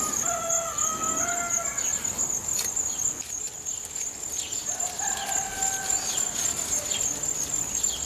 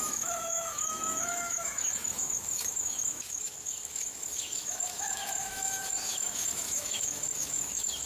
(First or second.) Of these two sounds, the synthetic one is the second